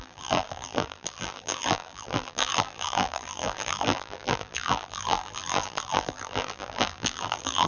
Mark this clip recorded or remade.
remade